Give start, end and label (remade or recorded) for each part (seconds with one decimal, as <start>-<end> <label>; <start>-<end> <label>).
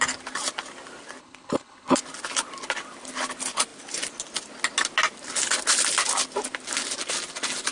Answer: 0.0-1.2 recorded; 1.2-2.0 remade; 2.0-7.7 recorded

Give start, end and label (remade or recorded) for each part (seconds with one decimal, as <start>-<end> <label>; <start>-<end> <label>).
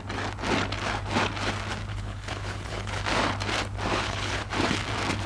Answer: 0.0-1.9 recorded; 1.9-3.0 remade; 3.0-3.9 recorded; 3.9-4.5 remade; 4.5-5.3 recorded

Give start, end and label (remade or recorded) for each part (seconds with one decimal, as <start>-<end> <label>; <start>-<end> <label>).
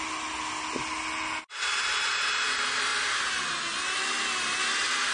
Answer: 0.0-5.1 recorded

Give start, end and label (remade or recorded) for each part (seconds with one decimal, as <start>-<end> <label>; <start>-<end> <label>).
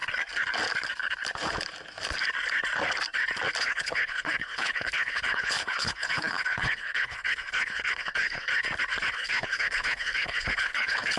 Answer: 0.0-3.6 recorded; 3.6-8.5 remade; 8.5-9.1 recorded; 9.1-11.2 remade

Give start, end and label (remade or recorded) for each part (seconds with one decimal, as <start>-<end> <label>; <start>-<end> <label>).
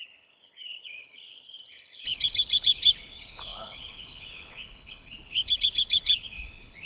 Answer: 0.0-6.9 remade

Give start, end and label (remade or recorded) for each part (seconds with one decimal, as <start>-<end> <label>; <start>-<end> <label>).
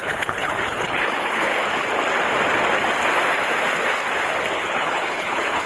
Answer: 0.0-1.5 remade; 1.5-4.5 recorded; 4.5-5.7 remade